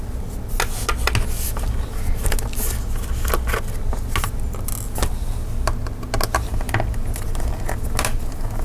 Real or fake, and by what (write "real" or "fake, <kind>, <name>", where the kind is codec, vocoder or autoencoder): real